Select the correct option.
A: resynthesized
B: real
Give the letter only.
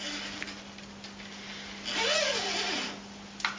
B